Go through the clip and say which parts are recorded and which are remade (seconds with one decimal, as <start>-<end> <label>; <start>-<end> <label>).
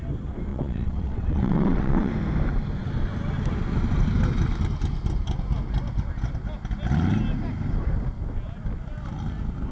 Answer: 0.0-0.5 recorded; 0.5-2.1 remade; 2.1-9.7 recorded